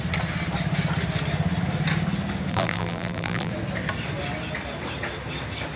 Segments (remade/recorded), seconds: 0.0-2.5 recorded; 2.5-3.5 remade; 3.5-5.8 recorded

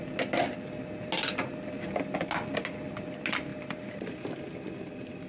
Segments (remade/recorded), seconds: 0.0-3.5 recorded; 3.5-4.7 remade; 4.7-5.3 recorded

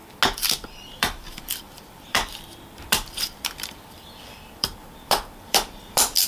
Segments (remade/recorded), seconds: 0.0-0.9 recorded; 0.9-6.3 remade

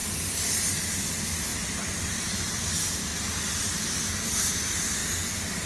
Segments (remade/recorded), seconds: 0.0-0.6 recorded; 0.6-5.0 remade; 5.0-5.7 recorded

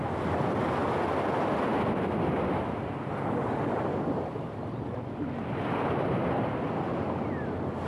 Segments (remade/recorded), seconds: 0.0-7.9 recorded

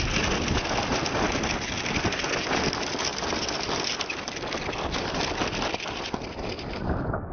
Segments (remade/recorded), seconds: 0.0-7.3 recorded

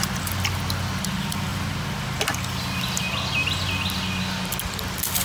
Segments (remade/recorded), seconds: 0.0-5.2 recorded